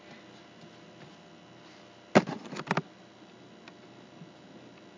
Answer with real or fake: real